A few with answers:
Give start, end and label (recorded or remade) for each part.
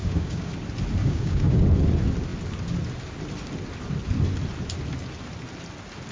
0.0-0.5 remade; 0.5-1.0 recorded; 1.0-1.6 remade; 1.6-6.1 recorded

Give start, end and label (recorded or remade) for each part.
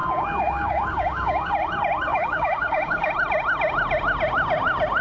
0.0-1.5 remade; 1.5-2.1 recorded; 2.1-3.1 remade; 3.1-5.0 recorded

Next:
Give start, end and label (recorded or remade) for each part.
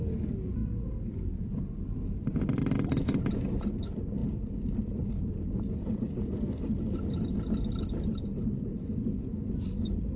0.0-0.6 recorded; 0.6-1.1 remade; 1.1-10.2 recorded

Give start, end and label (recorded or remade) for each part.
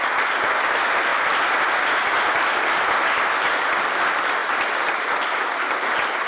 0.0-6.3 recorded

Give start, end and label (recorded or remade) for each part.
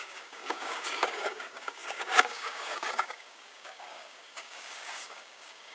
0.0-5.7 remade